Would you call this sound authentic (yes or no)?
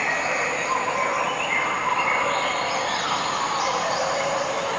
no